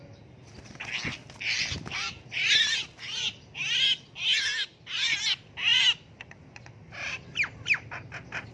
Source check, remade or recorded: recorded